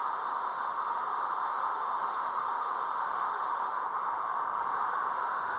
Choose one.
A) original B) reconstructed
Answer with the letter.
B